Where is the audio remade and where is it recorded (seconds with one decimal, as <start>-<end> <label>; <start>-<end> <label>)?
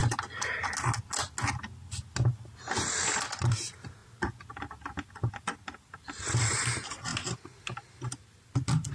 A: 0.0-8.9 recorded